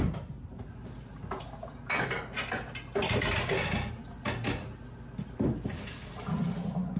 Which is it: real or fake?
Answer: real